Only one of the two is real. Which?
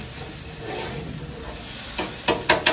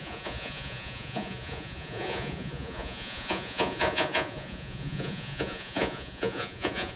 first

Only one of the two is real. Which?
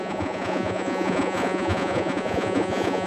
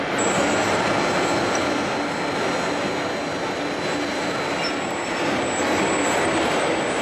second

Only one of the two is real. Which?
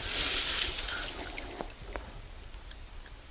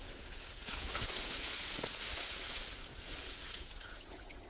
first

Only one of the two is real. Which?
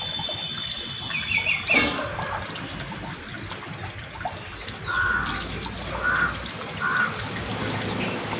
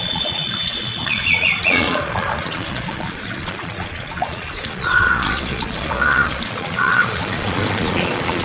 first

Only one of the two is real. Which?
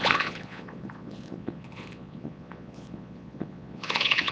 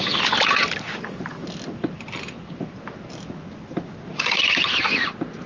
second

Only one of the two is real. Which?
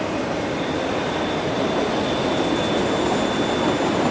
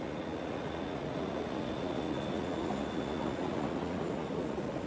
first